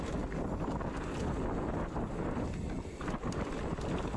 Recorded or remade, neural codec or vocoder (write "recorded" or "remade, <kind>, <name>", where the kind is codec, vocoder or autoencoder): recorded